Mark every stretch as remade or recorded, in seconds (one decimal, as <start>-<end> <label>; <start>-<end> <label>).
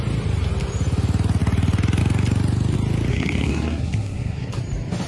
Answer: 0.0-3.1 recorded; 3.1-4.6 remade; 4.6-5.1 recorded